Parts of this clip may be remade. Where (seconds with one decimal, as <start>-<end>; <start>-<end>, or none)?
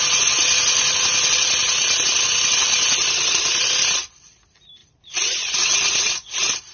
none